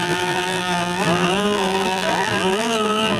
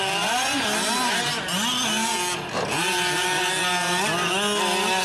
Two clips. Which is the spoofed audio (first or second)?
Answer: first